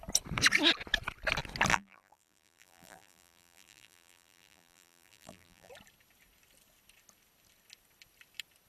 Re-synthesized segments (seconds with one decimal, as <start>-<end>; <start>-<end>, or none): 1.7-5.7